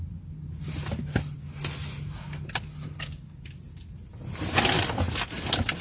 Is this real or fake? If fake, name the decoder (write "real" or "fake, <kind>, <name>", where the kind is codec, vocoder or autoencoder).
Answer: real